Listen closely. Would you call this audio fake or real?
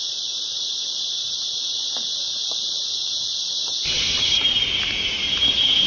fake